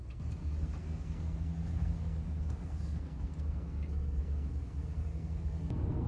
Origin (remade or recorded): remade